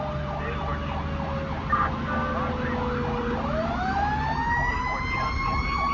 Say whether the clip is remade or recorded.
recorded